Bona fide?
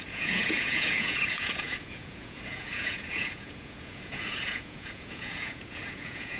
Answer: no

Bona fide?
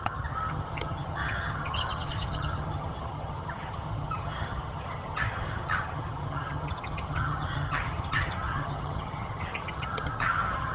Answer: no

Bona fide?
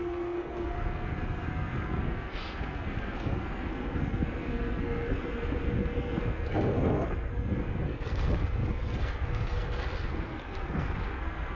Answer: no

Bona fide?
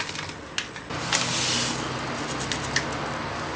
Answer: yes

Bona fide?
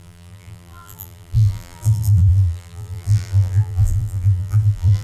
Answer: no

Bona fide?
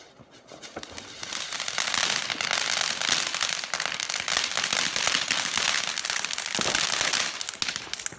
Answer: yes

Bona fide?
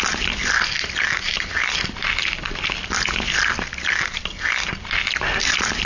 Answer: yes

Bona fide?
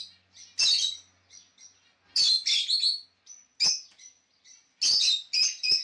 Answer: yes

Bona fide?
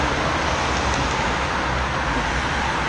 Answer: yes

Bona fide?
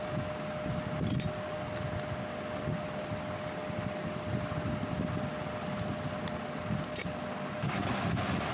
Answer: yes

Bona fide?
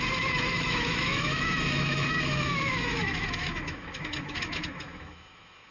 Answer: no